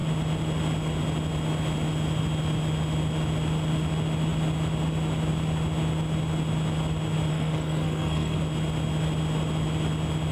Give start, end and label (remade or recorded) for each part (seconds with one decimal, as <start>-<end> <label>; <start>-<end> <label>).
0.0-7.3 recorded; 7.3-8.4 remade; 8.4-10.3 recorded